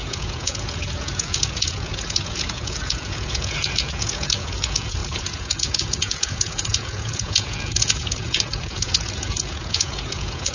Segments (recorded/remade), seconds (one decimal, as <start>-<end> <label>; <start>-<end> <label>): 0.0-10.5 remade